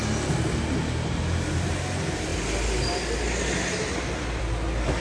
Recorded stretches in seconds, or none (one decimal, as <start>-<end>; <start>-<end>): 0.0-5.0